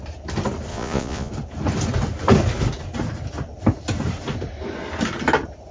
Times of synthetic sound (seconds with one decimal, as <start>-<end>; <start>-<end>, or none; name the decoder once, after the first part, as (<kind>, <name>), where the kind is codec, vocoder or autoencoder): 0.7-1.3 (vocoder, Vocos)